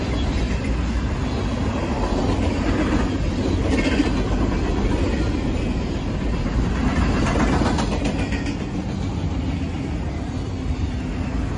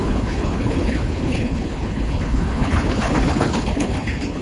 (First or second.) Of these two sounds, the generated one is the second